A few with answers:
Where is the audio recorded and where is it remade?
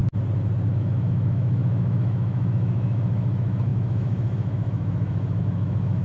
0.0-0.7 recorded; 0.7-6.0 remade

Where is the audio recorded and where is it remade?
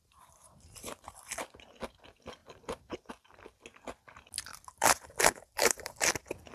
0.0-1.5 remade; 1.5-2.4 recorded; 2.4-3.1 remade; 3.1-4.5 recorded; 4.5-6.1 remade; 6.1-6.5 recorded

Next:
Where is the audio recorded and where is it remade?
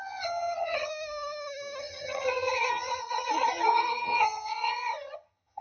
0.0-0.9 remade; 0.9-1.8 recorded; 1.8-5.6 remade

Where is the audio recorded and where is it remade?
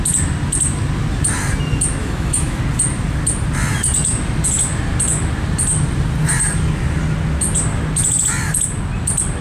0.0-2.0 recorded; 2.0-2.6 remade; 2.6-9.4 recorded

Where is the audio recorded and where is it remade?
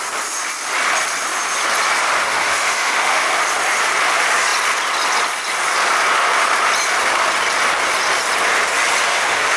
0.0-2.2 recorded; 2.2-3.3 remade; 3.3-9.1 recorded; 9.1-9.6 remade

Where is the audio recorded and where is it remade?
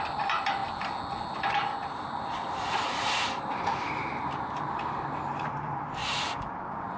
0.0-0.6 remade; 0.6-1.5 recorded; 1.5-6.0 remade; 6.0-7.0 recorded